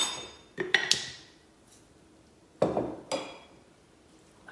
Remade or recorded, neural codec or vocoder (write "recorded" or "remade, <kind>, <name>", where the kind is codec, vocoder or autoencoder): recorded